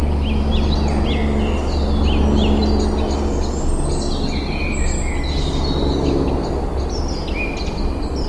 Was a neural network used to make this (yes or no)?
no